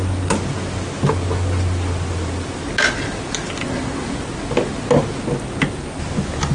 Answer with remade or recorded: recorded